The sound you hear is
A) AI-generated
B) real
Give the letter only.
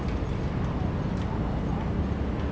B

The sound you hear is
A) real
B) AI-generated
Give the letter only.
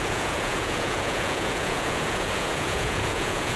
B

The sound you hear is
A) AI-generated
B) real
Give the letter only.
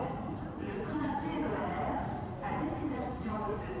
A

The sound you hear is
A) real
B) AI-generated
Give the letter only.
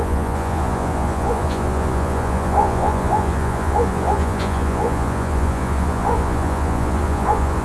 B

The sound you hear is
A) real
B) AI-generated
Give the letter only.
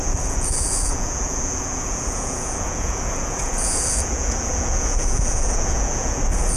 B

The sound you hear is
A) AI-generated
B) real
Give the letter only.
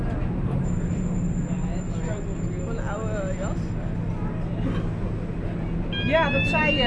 B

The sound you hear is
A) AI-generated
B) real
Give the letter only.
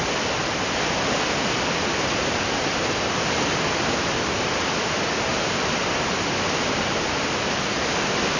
B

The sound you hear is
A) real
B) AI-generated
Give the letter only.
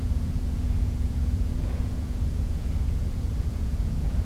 B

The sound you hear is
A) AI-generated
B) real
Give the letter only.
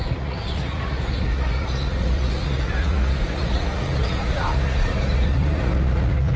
A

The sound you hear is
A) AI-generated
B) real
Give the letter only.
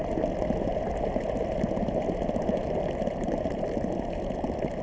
B